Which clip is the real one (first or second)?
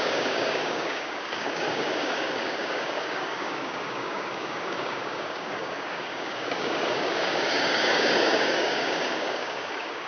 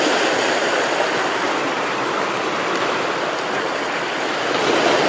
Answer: second